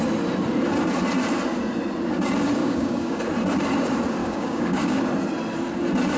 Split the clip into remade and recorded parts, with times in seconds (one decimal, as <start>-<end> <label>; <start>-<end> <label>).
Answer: 0.0-2.6 recorded; 2.6-3.2 remade; 3.2-4.2 recorded; 4.2-5.0 remade; 5.0-6.2 recorded